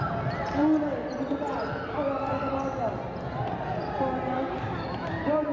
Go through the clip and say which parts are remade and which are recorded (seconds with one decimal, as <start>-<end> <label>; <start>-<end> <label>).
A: 0.0-5.5 recorded